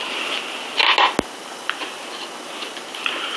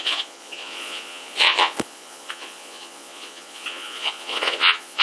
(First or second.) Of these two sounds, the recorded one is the first